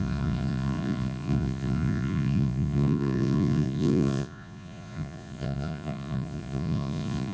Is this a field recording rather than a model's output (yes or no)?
no